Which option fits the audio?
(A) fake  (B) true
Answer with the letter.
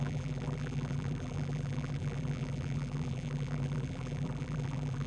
A